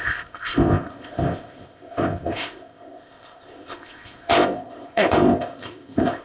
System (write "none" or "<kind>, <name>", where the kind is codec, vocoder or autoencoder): codec, ZipCodec